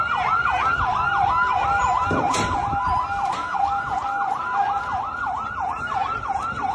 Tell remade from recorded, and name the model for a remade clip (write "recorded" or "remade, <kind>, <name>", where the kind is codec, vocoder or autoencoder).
recorded